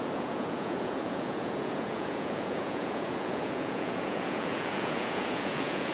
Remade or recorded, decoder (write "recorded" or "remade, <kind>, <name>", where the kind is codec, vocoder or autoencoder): remade, vocoder, Vocos